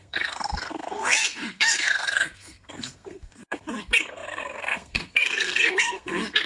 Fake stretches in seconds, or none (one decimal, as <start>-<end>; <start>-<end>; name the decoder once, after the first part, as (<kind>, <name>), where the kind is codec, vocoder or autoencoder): 0.0-6.5 (codec, SNAC)